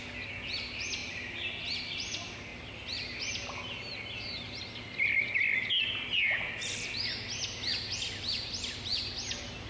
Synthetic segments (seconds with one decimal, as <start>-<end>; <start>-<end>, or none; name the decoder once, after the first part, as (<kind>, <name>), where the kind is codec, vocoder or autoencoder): none